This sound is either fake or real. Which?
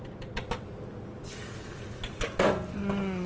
real